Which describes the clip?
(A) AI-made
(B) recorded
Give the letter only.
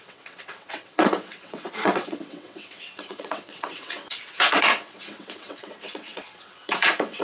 A